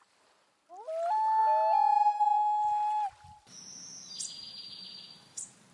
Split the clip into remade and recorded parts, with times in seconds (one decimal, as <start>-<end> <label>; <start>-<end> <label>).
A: 0.0-5.7 recorded